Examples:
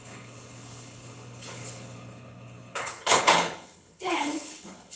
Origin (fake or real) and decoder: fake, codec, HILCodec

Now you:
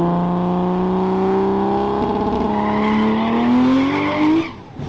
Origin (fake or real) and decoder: real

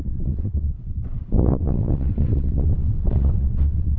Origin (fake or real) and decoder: fake, vocoder, WaveNeXt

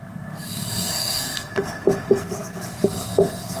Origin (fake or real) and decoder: fake, codec, SNAC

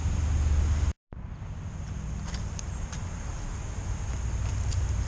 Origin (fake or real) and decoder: real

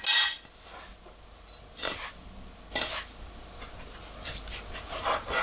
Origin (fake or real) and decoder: real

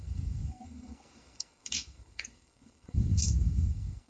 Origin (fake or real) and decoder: fake, codec, SNAC